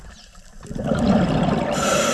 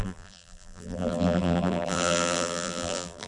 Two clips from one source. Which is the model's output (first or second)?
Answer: second